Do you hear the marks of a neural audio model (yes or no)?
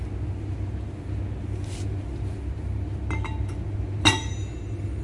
no